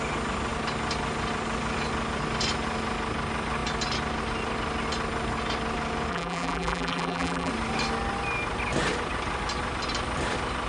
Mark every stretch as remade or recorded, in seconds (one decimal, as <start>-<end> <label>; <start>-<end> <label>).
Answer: 0.0-6.1 recorded; 6.1-7.5 remade; 7.5-10.7 recorded